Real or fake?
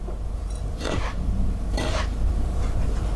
real